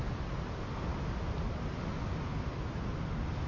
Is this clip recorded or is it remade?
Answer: recorded